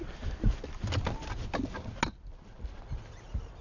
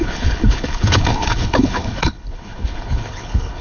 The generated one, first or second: second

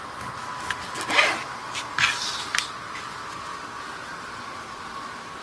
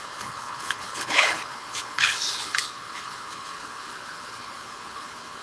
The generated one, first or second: second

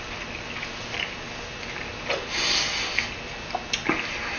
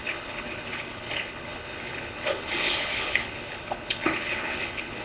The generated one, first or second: second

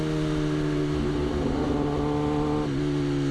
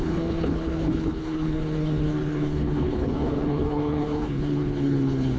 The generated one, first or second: second